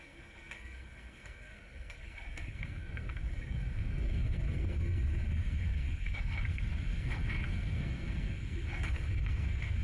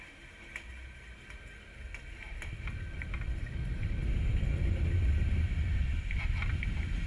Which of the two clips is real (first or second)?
second